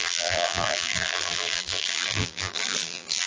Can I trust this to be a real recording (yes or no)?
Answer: no